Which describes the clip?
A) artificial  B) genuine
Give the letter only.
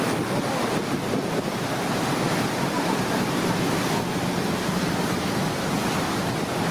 B